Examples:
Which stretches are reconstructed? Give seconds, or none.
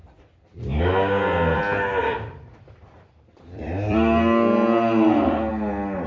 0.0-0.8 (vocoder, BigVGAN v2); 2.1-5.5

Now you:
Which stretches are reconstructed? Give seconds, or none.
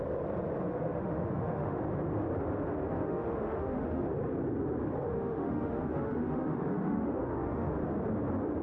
0.7-1.8 (autoencoder, DAC-VAE); 3.0-4.0; 5.1-7.7